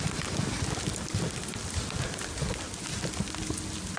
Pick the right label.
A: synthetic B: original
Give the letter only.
B